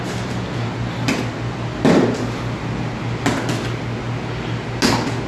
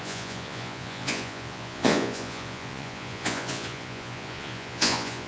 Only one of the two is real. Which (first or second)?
first